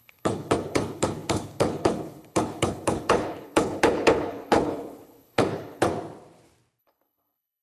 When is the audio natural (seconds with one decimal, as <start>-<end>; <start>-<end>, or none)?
5.9-6.8